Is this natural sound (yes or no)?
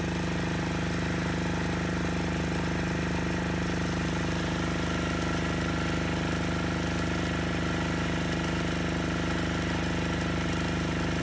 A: yes